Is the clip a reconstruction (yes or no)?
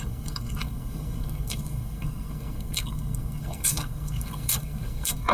yes